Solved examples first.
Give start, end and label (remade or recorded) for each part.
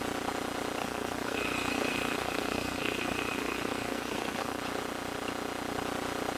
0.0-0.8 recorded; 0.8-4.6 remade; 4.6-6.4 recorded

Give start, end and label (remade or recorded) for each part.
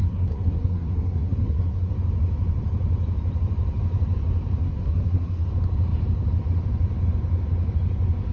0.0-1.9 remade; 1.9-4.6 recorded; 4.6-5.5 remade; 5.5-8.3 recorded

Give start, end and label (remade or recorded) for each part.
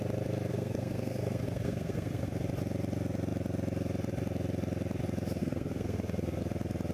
0.0-0.5 recorded; 0.5-2.3 remade; 2.3-5.4 recorded; 5.4-6.4 remade; 6.4-6.9 recorded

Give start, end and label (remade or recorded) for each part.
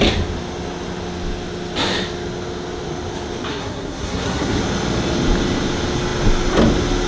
0.0-3.5 recorded; 3.5-4.6 remade; 4.6-7.1 recorded